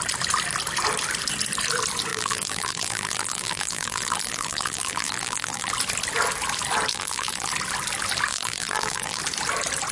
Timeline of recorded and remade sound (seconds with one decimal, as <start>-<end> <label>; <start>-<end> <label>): 0.0-2.1 recorded; 2.1-5.7 remade; 5.7-6.9 recorded; 6.9-7.5 remade; 7.5-8.3 recorded; 8.3-9.2 remade; 9.2-9.9 recorded